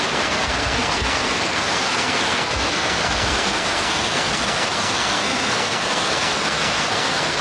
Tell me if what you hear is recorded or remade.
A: remade